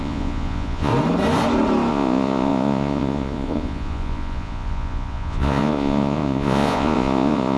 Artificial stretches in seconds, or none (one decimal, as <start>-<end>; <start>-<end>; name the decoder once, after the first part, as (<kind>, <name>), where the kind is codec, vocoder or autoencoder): 0.0-0.9 (vocoder, Vocos); 1.9-7.6